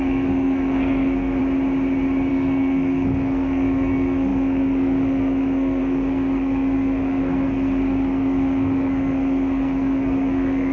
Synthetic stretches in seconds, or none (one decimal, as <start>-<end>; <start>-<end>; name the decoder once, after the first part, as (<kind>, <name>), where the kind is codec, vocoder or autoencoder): 0.0-1.4 (codec, SNAC); 2.3-10.7